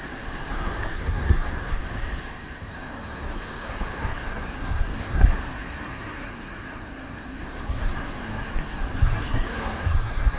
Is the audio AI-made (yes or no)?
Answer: yes